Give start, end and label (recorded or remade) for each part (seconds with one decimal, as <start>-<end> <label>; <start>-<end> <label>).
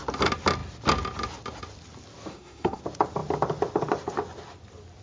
0.0-2.3 recorded; 2.3-2.8 remade; 2.8-5.0 recorded